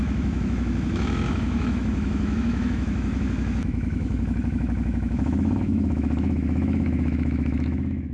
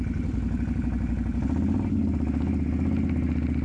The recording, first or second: second